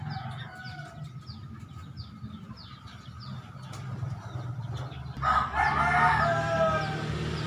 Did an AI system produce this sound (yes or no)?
no